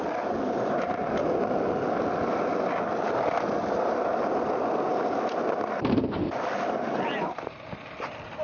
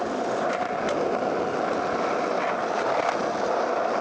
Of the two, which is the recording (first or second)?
second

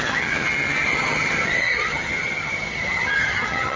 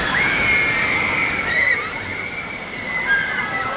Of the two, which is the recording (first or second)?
second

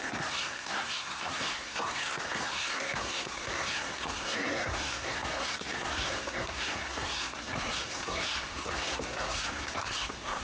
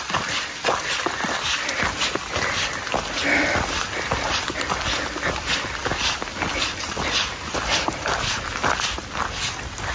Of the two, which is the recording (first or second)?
second